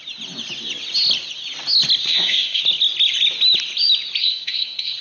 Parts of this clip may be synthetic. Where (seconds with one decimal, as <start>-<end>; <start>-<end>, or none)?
2.0-2.6; 4.2-5.0